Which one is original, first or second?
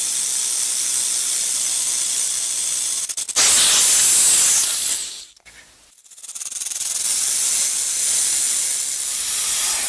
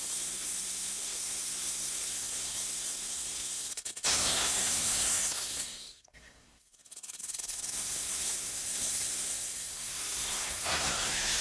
first